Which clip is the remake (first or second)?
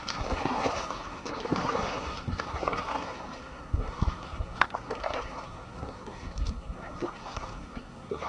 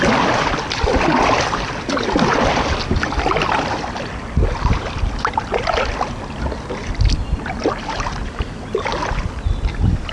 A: first